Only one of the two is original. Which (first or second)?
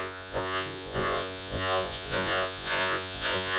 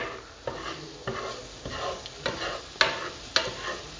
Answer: second